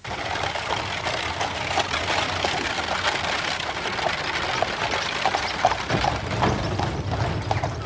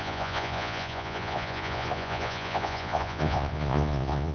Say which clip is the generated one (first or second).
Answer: second